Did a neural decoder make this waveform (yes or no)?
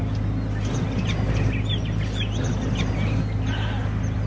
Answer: no